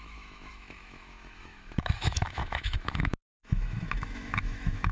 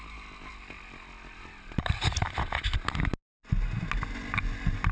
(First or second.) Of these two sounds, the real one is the second